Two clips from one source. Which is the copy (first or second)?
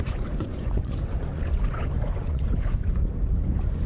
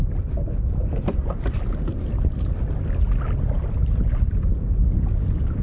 first